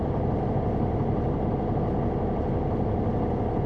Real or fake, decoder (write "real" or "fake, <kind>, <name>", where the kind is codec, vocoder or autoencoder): real